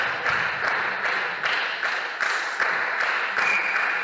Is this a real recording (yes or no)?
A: yes